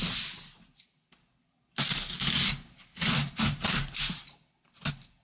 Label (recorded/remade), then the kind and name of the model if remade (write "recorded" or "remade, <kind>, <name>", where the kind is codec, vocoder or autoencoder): recorded